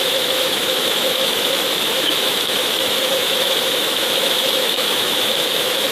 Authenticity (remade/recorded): remade